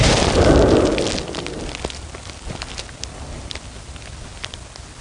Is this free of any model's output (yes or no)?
yes